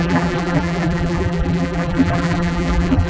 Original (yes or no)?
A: no